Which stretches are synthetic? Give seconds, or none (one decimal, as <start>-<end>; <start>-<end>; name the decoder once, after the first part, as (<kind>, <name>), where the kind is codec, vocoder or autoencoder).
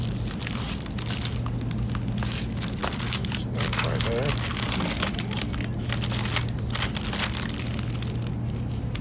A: none